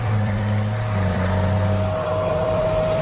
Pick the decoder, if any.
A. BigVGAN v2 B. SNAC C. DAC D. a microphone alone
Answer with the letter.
A